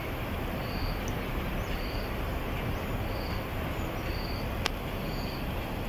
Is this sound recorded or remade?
recorded